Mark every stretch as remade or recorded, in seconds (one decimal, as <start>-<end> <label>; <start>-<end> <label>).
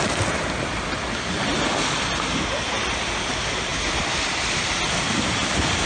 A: 0.0-5.9 recorded